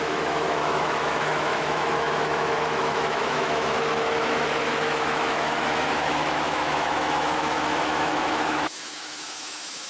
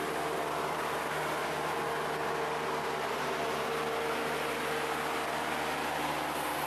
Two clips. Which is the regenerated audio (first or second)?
first